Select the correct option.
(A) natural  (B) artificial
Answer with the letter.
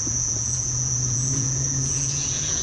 B